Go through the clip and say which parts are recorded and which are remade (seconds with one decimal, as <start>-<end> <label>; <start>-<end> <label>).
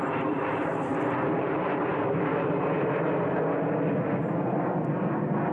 0.0-0.9 remade; 0.9-1.4 recorded; 1.4-1.9 remade; 1.9-5.5 recorded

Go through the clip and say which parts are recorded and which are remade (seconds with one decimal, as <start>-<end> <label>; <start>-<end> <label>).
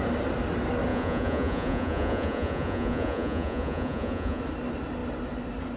0.0-0.9 recorded; 0.9-4.4 remade; 4.4-5.8 recorded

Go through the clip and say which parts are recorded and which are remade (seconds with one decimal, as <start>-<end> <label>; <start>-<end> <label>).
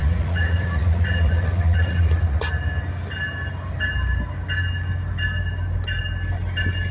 0.0-2.5 remade; 2.5-6.9 recorded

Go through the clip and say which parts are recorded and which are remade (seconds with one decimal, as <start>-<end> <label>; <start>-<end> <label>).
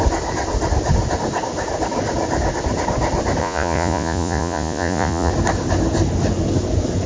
0.0-3.4 recorded; 3.4-5.3 remade; 5.3-7.1 recorded